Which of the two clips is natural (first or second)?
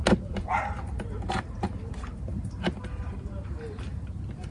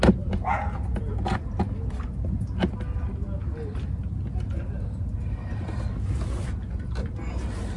second